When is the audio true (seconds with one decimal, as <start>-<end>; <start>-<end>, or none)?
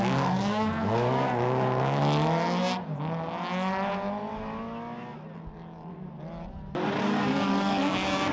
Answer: 2.0-7.0